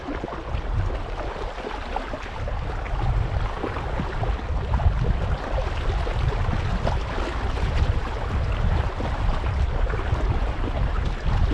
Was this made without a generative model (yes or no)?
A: yes